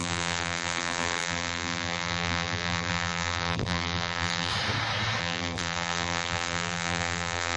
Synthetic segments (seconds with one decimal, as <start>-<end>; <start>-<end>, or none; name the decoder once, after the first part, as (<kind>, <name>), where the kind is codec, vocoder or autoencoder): 0.0-4.5 (vocoder, BigVGAN v2); 5.2-7.6